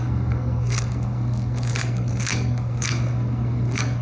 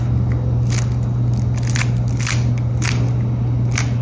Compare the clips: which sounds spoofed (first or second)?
first